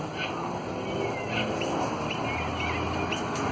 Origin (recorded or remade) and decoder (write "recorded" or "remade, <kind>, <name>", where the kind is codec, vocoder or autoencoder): recorded